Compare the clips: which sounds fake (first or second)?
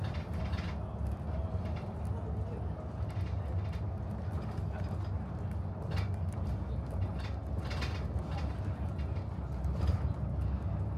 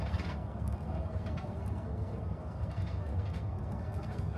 second